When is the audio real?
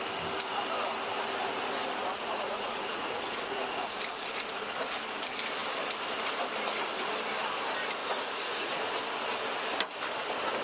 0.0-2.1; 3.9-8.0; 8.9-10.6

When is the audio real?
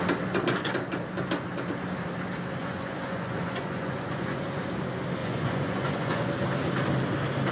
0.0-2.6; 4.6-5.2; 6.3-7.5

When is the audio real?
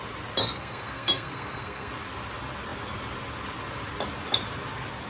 0.0-0.4; 1.9-5.1